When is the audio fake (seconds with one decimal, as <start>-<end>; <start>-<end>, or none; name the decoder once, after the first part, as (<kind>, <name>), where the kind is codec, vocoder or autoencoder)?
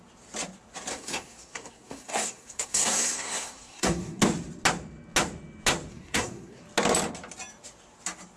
0.9-4.2 (codec, SNAC); 5.9-6.6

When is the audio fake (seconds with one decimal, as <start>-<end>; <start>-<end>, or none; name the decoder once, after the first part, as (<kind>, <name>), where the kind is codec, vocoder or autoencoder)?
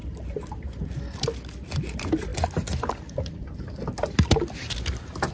0.0-0.8 (vocoder, BigVGAN v2)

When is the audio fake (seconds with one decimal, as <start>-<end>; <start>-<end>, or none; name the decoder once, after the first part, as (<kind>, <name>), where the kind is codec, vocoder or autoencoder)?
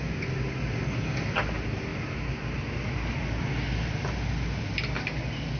none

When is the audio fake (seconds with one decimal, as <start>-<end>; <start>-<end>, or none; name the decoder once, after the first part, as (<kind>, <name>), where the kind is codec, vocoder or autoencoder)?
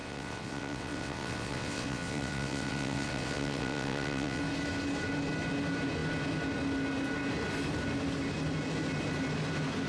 0.0-4.4 (vocoder, WaveNeXt)